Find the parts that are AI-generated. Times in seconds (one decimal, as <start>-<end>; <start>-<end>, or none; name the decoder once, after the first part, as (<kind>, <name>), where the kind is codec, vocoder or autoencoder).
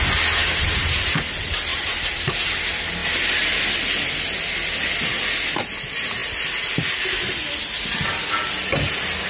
0.4-1.0 (vocoder, BigVGAN v2); 1.7-2.3